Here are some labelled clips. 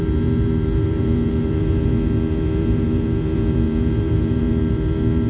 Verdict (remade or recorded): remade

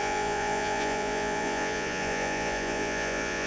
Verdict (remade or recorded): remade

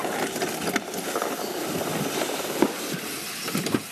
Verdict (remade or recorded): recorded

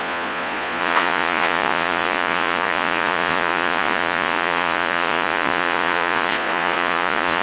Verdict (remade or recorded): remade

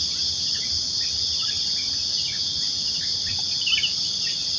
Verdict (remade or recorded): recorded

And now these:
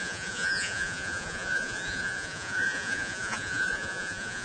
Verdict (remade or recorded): remade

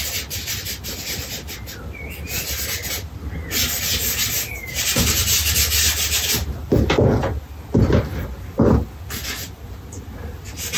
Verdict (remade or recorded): recorded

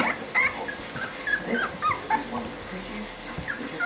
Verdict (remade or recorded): recorded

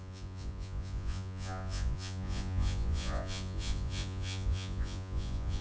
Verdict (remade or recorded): remade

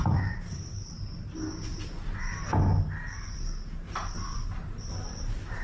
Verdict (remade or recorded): recorded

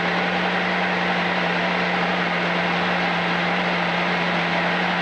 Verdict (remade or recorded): recorded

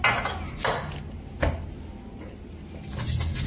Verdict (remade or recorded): recorded